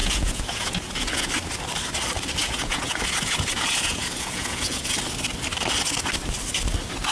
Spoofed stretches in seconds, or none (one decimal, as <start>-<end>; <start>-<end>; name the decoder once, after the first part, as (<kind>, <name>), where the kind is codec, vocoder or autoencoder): 0.0-1.3 (vocoder, Vocos); 2.4-5.0